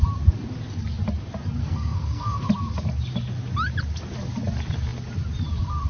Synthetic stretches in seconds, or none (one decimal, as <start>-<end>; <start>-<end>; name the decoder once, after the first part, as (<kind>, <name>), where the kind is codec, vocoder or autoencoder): 1.6-2.5 (codec, SNAC)